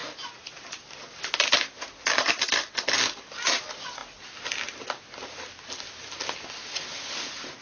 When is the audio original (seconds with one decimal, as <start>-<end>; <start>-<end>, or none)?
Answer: 0.0-7.6